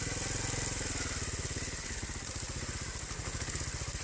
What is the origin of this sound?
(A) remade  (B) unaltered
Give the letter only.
B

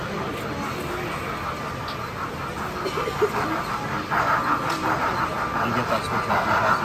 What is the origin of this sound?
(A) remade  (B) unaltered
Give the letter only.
B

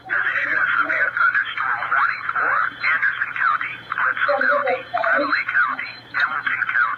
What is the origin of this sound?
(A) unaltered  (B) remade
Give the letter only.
B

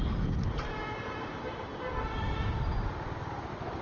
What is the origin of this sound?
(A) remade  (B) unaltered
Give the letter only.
B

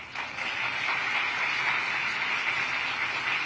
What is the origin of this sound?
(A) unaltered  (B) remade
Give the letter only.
A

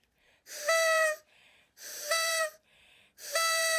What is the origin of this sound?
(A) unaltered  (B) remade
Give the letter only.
B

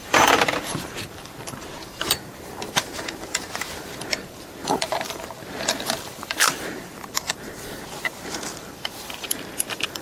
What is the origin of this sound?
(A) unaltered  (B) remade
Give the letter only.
B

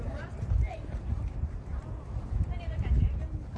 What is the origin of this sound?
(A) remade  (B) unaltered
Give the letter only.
A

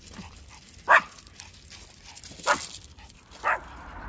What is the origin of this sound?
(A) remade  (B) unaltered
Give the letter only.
A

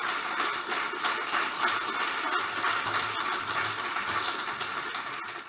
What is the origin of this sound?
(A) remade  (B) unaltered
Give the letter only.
B